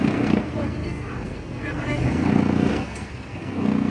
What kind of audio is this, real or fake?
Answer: fake